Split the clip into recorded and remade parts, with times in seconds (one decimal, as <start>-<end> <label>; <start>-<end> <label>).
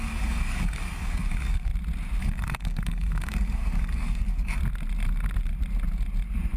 0.0-1.7 remade; 1.7-2.2 recorded; 2.2-4.6 remade; 4.6-6.6 recorded